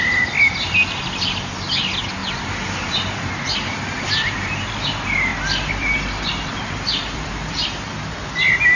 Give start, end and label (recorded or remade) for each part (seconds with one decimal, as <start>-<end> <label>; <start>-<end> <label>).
0.0-2.2 recorded; 2.2-4.5 remade; 4.5-5.3 recorded; 5.3-7.3 remade; 7.3-8.8 recorded